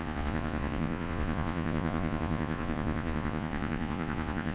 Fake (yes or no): yes